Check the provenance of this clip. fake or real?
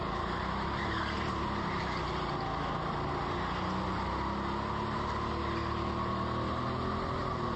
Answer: real